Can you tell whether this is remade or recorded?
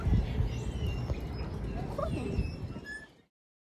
recorded